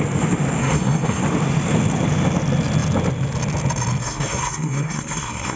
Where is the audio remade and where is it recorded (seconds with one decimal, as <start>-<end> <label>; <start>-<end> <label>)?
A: 0.0-0.6 recorded; 0.6-1.2 remade; 1.2-4.0 recorded; 4.0-5.6 remade